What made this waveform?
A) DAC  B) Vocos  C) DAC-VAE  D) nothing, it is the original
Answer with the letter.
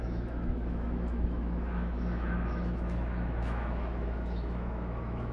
C